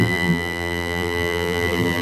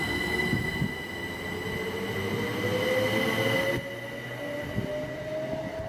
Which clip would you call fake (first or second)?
first